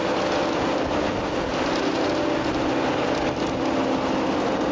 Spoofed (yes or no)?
no